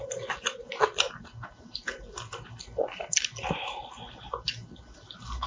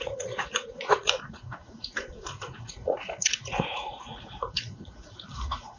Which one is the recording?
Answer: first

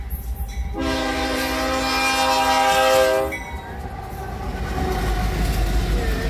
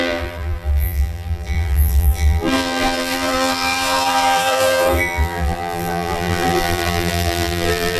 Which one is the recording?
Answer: first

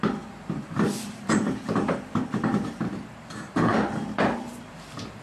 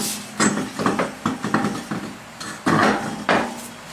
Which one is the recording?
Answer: second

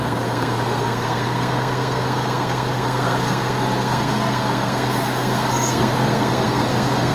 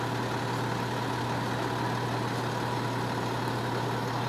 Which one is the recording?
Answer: second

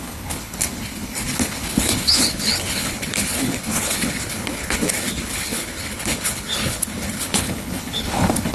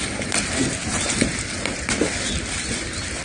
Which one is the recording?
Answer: second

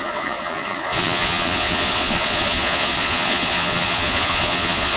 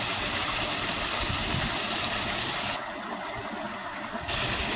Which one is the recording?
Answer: second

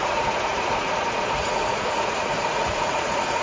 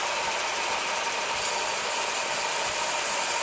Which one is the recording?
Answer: second